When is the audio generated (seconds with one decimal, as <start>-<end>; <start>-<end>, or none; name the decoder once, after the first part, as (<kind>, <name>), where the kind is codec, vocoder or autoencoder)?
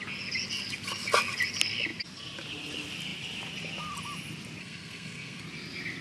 4.6-5.4 (codec, SNAC)